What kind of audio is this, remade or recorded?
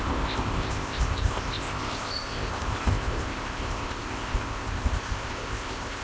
remade